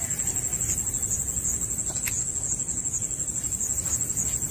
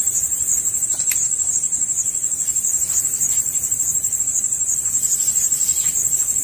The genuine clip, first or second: first